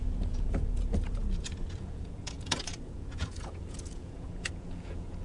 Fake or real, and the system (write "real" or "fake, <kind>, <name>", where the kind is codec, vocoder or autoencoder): fake, vocoder, Vocos